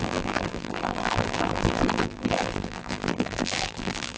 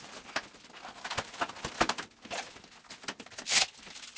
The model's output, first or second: first